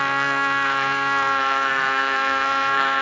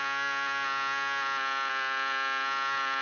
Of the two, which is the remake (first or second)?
first